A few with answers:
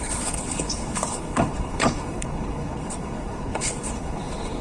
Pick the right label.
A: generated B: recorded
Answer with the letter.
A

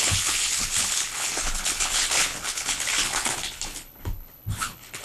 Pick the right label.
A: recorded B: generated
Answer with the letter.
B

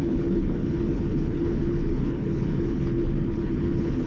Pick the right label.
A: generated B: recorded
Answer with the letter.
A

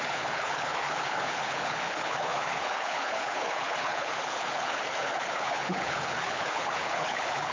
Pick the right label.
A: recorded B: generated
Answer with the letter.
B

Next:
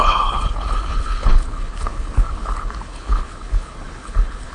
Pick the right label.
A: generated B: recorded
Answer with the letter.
A